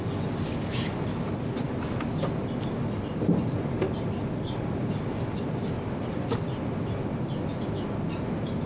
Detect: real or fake real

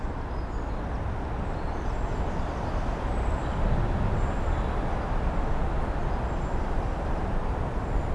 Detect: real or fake real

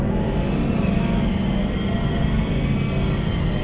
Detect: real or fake real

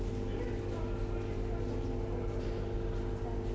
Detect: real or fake real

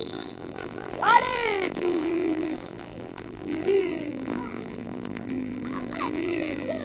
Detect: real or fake fake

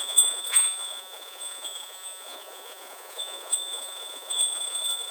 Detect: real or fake fake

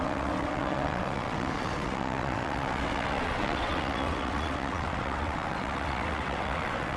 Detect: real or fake fake